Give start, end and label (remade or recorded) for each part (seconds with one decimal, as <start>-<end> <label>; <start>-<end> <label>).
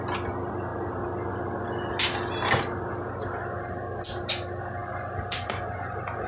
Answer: 0.0-6.3 recorded